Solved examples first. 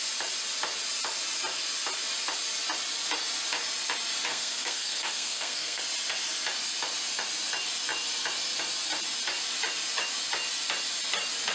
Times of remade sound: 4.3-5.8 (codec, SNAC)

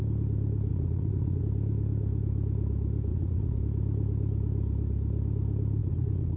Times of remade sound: 0.7-1.4 (vocoder, Vocos); 3.1-3.6; 5.8-6.4

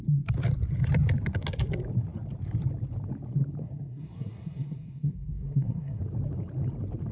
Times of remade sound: 3.6-6.0 (codec, SNAC)

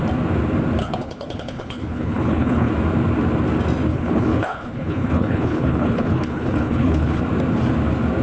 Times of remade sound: 0.8-2.7 (codec, HILCodec); 3.9-7.2